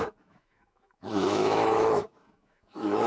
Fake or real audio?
fake